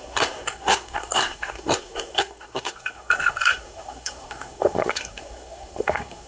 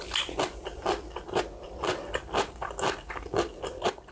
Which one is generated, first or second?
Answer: first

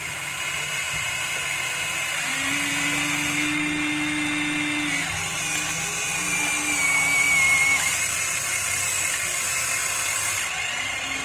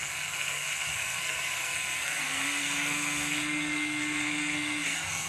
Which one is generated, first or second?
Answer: second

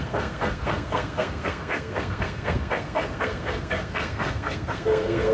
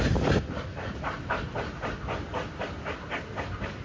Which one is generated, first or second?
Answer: first